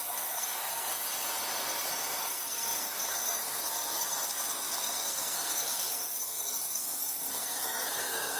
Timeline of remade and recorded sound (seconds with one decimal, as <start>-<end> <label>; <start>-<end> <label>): 0.0-0.9 remade; 0.9-2.2 recorded; 2.2-8.4 remade